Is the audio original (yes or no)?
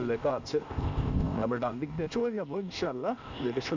no